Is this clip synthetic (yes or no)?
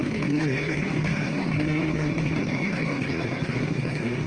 yes